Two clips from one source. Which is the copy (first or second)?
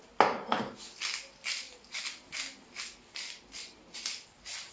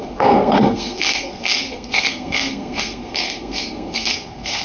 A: second